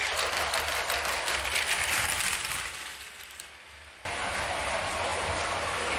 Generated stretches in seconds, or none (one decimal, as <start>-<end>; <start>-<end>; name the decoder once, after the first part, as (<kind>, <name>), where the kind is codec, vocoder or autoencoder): none